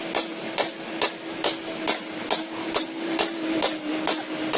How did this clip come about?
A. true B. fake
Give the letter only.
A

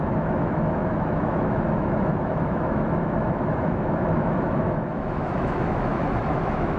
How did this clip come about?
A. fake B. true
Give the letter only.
A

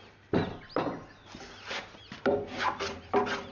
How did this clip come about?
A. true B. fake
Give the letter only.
A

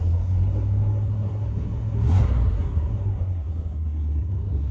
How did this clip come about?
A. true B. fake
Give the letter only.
B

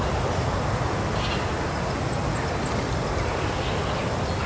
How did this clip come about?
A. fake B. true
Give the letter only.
B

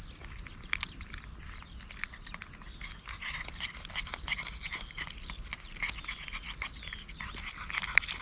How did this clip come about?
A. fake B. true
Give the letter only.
B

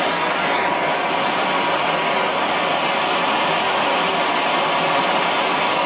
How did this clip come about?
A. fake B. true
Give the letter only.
B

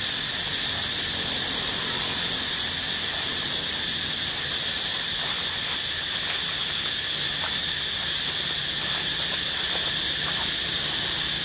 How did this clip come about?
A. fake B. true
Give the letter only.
B